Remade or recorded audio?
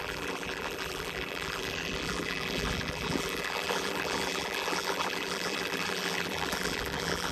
remade